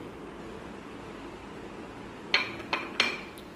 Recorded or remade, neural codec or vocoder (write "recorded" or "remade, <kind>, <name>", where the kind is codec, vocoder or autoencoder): recorded